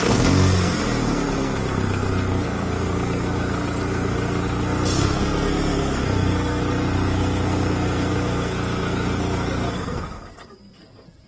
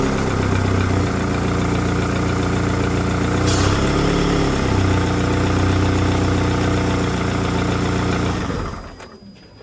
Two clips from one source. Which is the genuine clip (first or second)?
second